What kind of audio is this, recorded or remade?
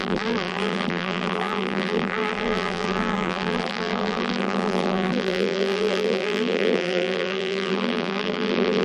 remade